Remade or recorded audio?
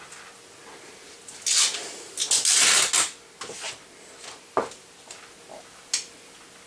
recorded